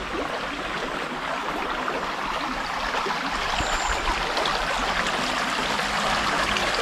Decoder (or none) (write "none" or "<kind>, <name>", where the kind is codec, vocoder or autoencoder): none